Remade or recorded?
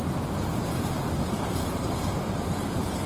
recorded